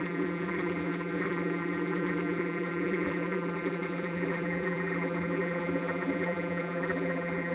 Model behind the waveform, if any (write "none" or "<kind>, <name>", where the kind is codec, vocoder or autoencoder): vocoder, BigVGAN v2